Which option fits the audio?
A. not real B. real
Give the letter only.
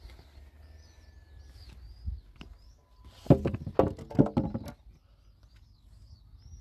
B